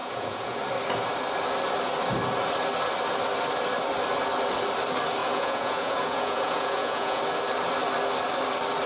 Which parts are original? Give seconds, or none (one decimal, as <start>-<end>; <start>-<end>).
0.6-5.2; 7.2-8.9